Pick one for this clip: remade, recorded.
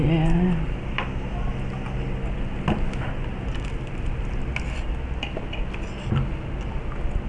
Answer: recorded